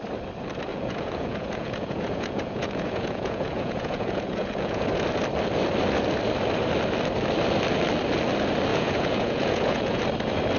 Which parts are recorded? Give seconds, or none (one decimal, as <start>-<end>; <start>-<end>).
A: 0.0-0.7; 4.9-8.7; 10.0-10.6